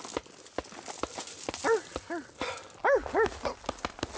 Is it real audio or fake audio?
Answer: real